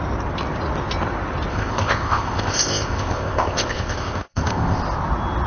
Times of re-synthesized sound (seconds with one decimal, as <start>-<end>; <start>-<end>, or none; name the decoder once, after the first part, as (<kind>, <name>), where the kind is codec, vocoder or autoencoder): 1.5-4.8 (codec, ZipCodec)